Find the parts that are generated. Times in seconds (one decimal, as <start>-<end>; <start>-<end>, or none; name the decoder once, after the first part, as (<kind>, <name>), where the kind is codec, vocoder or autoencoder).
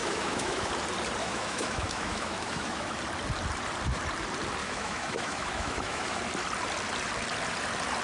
0.0-0.7 (autoencoder, DAC-VAE); 1.2-2.9; 4.6-6.2